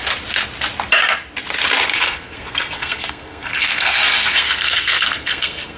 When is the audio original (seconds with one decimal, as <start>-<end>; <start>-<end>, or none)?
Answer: 0.0-1.9

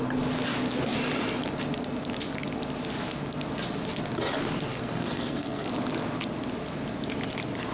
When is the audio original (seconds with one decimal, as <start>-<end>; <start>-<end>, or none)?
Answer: 0.0-4.7; 5.7-7.7

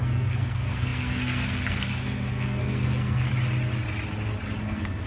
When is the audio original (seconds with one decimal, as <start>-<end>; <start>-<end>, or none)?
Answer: 3.3-4.6

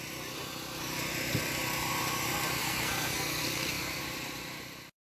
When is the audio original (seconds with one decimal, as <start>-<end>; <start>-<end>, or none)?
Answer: 0.0-2.6; 4.0-5.0

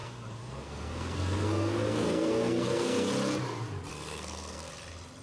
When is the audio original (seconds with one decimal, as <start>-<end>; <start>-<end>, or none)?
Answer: 3.1-3.9; 4.7-5.2

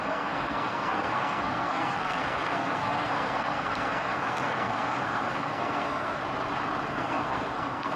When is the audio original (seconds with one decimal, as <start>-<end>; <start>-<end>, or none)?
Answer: 6.2-6.9